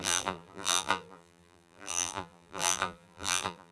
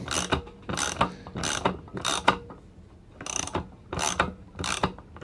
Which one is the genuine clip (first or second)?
second